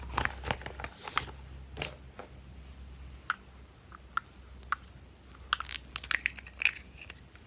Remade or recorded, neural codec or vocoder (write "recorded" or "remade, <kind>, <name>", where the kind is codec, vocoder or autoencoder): recorded